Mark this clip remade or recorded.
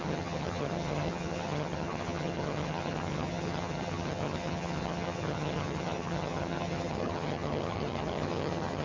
remade